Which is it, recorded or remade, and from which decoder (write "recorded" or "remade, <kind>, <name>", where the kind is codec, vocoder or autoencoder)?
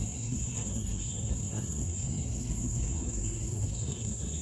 remade, codec, SNAC